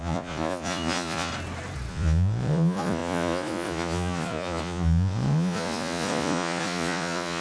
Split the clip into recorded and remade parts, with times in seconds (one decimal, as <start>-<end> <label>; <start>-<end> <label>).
0.0-1.3 remade; 1.3-1.9 recorded; 1.9-7.4 remade

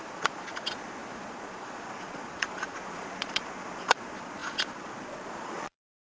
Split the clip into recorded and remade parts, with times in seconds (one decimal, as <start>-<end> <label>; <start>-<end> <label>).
0.0-6.0 remade

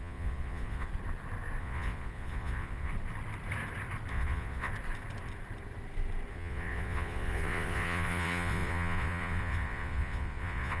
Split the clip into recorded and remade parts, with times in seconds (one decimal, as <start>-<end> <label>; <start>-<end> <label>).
0.0-0.9 remade; 0.9-1.6 recorded; 1.6-2.9 remade; 2.9-4.1 recorded; 4.1-4.7 remade; 4.7-6.3 recorded; 6.3-10.8 remade

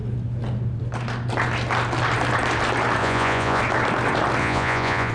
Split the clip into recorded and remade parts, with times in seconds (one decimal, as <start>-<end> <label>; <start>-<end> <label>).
0.0-3.0 recorded; 3.0-3.6 remade; 3.6-4.4 recorded; 4.4-5.1 remade

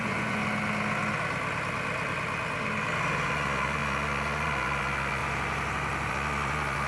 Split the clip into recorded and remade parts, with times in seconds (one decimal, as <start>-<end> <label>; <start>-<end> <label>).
0.0-0.4 remade; 0.4-3.3 recorded; 3.3-5.2 remade; 5.2-6.1 recorded; 6.1-6.9 remade

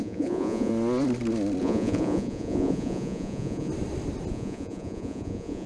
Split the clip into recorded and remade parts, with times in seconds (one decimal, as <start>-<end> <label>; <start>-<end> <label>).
0.0-0.7 remade; 0.7-1.6 recorded; 1.6-3.7 remade; 3.7-4.3 recorded; 4.3-5.7 remade

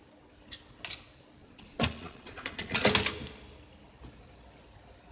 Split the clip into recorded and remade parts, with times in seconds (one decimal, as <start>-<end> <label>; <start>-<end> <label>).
0.0-1.4 recorded; 1.4-2.8 remade; 2.8-5.1 recorded

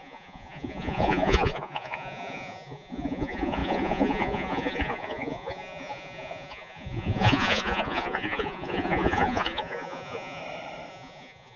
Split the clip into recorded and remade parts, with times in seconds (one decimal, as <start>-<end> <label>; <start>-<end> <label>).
0.0-10.4 remade; 10.4-10.9 recorded; 10.9-11.6 remade